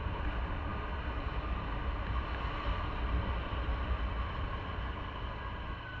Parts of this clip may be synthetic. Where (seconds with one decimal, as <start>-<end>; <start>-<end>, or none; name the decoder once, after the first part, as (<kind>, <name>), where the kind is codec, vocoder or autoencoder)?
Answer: none